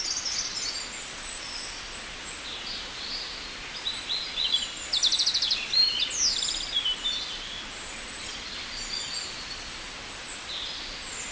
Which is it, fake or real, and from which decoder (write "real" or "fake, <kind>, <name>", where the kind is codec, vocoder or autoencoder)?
real